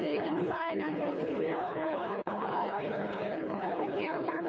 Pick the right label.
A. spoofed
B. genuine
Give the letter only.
A